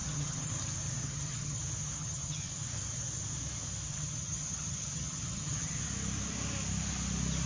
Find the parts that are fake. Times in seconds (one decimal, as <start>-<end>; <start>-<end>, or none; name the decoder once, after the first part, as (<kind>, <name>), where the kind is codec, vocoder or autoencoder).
0.0-0.5 (vocoder, HiFi-GAN); 1.0-1.6; 2.0-2.5; 3.9-5.8